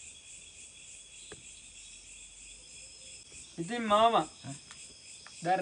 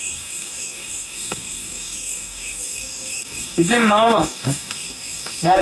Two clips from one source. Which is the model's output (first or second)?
second